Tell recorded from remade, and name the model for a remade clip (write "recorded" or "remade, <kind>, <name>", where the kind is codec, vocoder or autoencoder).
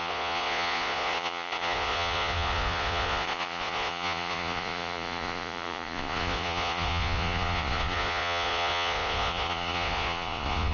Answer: remade, vocoder, Vocos